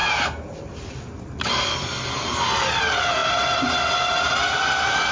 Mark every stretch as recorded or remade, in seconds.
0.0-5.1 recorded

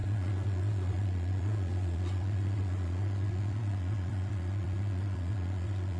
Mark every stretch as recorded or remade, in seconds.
0.0-6.0 remade

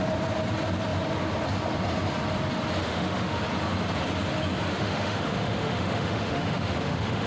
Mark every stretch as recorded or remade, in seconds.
0.0-2.8 recorded; 2.8-3.4 remade; 3.4-4.7 recorded; 4.7-7.3 remade

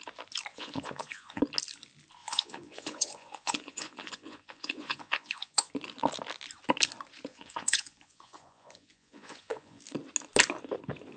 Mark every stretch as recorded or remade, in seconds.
0.0-0.5 recorded; 0.5-1.4 remade; 1.4-2.2 recorded; 2.2-5.7 remade; 5.7-7.3 recorded; 7.3-9.8 remade; 9.8-11.2 recorded